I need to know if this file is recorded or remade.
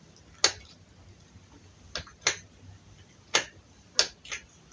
recorded